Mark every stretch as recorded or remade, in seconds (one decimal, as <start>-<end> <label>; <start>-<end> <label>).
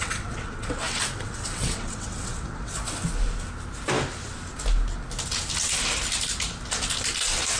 0.0-2.7 remade; 2.7-7.6 recorded